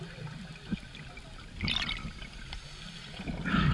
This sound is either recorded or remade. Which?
recorded